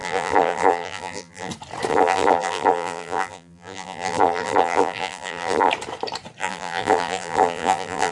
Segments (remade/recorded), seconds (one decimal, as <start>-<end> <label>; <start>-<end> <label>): 0.0-1.5 remade; 1.5-1.9 recorded; 1.9-5.7 remade; 5.7-6.4 recorded; 6.4-8.1 remade